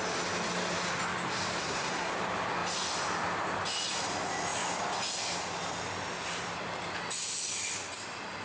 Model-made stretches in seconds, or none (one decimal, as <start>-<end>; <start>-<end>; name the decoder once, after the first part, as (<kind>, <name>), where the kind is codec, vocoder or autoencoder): 1.6-2.1 (codec, SNAC)